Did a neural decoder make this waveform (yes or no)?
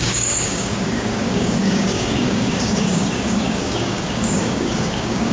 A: yes